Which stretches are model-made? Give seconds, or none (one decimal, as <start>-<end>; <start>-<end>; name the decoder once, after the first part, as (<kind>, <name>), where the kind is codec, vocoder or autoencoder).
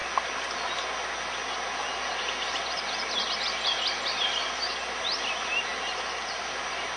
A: none